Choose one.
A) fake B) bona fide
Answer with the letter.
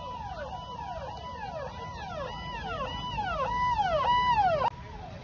B